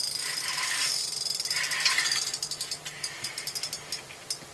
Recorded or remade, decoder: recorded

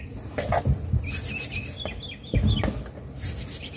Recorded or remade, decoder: recorded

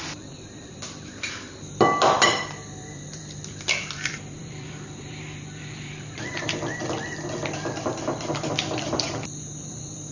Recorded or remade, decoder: remade, vocoder, BigVGAN v2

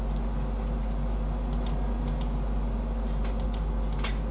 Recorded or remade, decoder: recorded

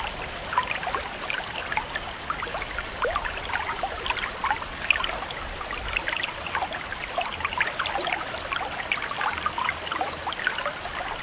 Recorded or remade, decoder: recorded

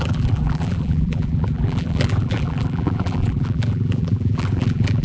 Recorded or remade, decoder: remade, vocoder, BigVGAN v2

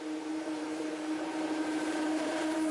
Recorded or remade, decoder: remade, vocoder, BigVGAN v2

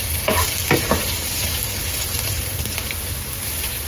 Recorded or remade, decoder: remade, vocoder, BigVGAN v2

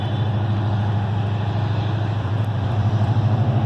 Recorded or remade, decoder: remade, vocoder, BigVGAN v2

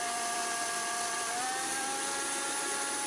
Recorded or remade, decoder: remade, vocoder, BigVGAN v2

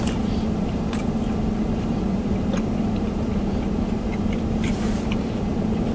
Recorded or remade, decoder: remade, vocoder, BigVGAN v2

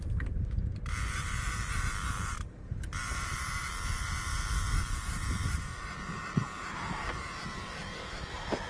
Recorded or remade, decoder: remade, vocoder, BigVGAN v2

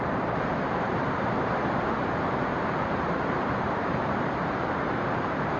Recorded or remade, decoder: remade, vocoder, BigVGAN v2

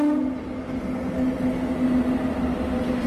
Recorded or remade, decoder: recorded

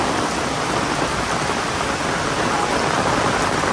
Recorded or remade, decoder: remade, vocoder, BigVGAN v2